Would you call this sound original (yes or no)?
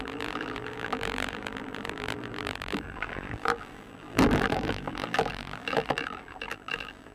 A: no